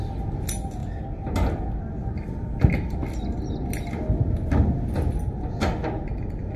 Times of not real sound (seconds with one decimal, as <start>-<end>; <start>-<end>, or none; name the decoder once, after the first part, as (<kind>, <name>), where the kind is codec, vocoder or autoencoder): none